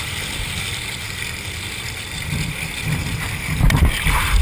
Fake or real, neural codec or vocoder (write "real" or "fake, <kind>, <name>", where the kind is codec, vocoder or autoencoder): fake, vocoder, BigVGAN v2